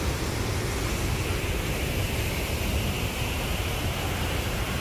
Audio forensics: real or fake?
real